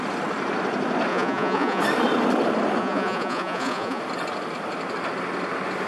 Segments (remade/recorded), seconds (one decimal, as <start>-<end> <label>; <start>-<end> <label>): 0.0-1.1 recorded; 1.1-1.8 remade; 1.8-2.8 recorded; 2.8-4.0 remade; 4.0-5.9 recorded